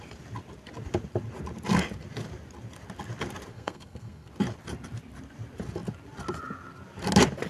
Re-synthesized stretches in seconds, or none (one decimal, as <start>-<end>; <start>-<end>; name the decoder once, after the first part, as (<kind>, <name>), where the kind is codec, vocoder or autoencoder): 3.5-4.3 (codec, SNAC)